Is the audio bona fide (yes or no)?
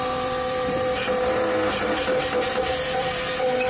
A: no